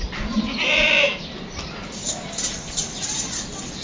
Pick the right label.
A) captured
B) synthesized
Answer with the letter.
A